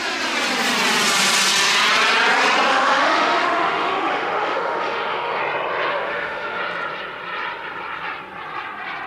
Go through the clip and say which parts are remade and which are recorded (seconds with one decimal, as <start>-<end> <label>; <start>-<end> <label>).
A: 0.0-2.7 recorded; 2.7-5.4 remade; 5.4-5.9 recorded; 5.9-6.6 remade; 6.6-9.1 recorded